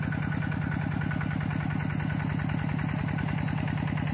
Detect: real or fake real